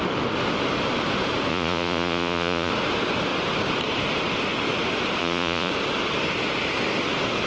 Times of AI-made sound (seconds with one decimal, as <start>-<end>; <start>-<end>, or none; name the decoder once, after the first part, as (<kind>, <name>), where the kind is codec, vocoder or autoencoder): 1.5-2.7 (vocoder, Vocos); 5.2-5.7